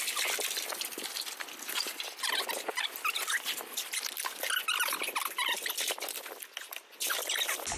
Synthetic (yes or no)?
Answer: no